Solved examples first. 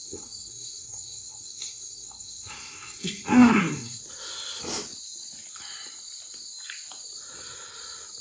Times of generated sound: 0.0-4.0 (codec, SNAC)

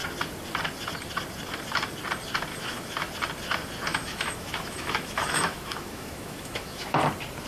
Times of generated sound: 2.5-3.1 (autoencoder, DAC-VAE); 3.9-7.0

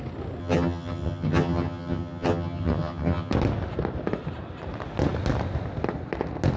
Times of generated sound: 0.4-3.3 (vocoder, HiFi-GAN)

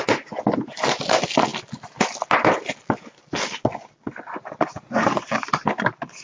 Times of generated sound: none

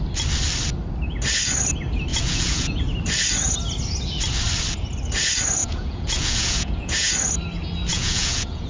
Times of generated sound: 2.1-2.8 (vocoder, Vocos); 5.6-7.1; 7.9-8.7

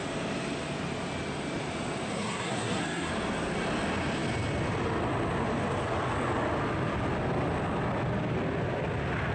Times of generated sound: 2.1-3.1 (codec, SNAC)